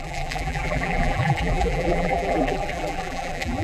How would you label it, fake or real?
fake